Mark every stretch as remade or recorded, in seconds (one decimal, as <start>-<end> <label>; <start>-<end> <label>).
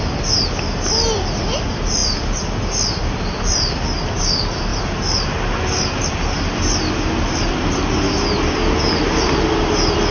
0.0-10.1 recorded